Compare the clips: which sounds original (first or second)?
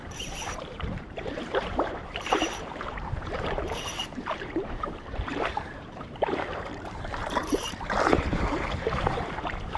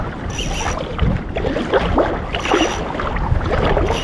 second